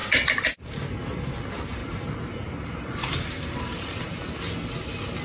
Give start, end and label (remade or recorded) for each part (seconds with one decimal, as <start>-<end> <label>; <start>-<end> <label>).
0.0-1.8 recorded; 1.8-4.3 remade; 4.3-5.2 recorded